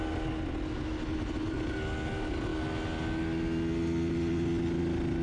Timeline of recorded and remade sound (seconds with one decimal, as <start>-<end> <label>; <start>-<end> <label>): 0.0-5.2 recorded